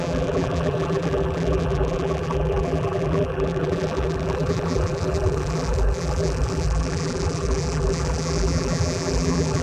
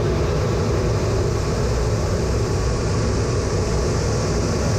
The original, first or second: second